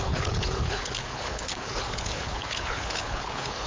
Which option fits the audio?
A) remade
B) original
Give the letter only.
A